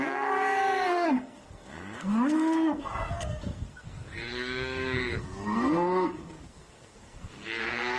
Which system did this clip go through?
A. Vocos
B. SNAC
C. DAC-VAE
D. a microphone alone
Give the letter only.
B